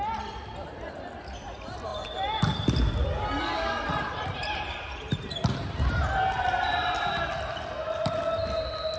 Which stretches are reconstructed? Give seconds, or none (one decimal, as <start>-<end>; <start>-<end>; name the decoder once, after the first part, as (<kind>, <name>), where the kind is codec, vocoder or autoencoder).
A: 3.9-7.1 (vocoder, BigVGAN v2)